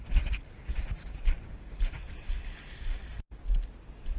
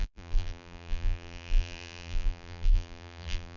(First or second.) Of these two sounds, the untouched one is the first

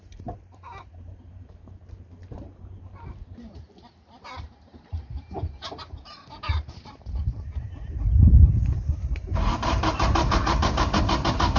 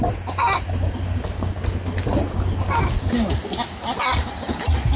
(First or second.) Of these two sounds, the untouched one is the second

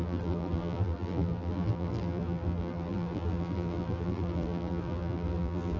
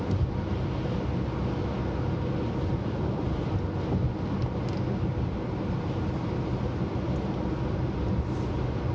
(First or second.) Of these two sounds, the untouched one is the second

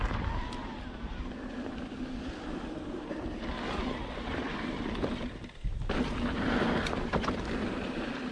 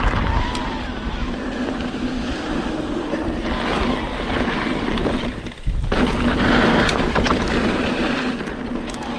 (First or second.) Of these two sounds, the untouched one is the second